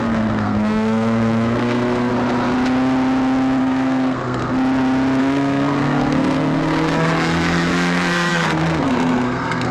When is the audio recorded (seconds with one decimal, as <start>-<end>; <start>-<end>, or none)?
2.1-3.6; 4.4-5.2